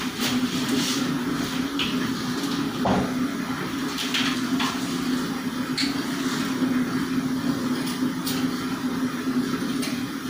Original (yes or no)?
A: yes